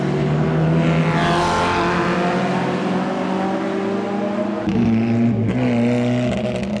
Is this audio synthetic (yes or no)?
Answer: no